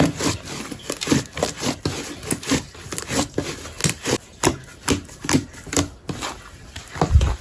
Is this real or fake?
real